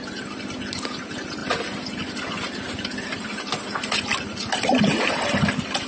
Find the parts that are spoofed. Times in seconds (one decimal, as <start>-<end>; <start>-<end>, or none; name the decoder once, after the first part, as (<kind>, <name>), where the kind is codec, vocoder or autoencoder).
none